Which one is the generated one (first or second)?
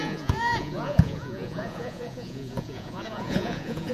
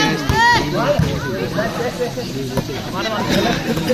first